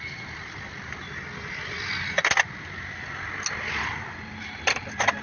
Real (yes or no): yes